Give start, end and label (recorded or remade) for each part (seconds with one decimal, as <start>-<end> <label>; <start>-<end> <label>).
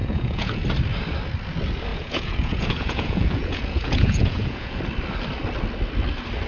0.0-0.6 remade; 0.6-1.9 recorded; 1.9-4.8 remade; 4.8-6.5 recorded